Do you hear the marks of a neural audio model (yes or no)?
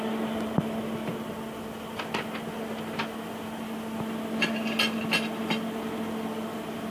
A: no